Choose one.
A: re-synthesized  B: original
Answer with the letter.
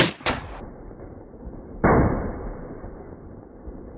A